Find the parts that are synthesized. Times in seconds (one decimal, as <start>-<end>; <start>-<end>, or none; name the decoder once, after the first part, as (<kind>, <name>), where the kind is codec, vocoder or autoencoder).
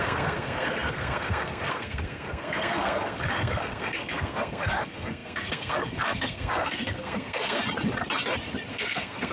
0.0-7.6 (codec, SNAC); 8.7-9.3